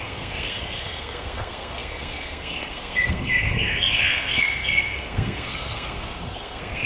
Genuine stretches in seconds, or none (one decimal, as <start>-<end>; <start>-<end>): none